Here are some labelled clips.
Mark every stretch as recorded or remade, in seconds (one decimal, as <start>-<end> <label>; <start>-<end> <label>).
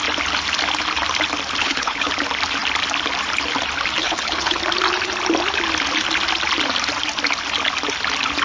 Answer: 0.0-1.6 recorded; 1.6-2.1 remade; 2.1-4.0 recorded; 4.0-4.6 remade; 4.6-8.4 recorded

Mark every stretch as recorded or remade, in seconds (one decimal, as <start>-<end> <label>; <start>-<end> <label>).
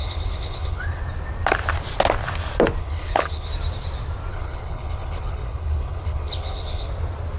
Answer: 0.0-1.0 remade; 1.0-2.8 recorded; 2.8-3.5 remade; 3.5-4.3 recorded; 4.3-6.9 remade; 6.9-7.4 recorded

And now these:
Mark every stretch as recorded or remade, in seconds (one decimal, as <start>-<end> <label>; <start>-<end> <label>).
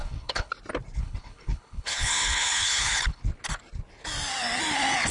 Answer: 0.0-0.5 remade; 0.5-1.0 recorded; 1.0-3.2 remade; 3.2-5.1 recorded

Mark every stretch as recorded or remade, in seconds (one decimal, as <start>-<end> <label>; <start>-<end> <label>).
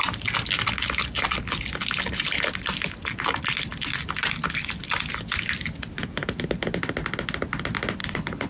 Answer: 0.0-8.0 recorded; 8.0-8.5 remade